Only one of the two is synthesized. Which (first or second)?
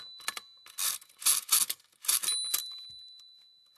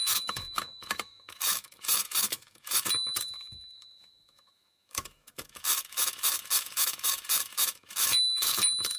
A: second